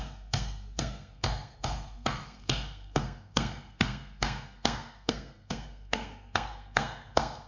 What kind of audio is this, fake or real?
fake